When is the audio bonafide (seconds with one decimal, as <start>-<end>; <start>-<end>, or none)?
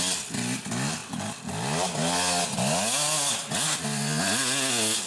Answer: 0.0-5.1